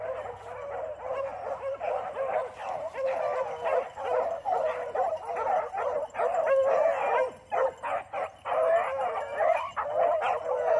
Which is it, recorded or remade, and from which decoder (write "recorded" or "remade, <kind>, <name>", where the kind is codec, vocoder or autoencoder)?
recorded